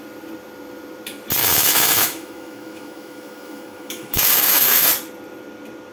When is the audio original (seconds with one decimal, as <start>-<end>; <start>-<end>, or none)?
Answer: 0.0-1.4; 4.9-5.9